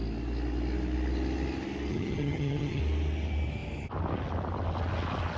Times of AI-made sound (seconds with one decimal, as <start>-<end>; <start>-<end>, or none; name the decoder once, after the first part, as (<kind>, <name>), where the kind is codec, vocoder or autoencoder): 1.9-2.8 (vocoder, HiFi-GAN)